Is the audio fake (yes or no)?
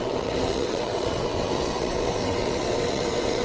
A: yes